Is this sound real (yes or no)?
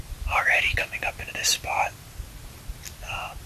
yes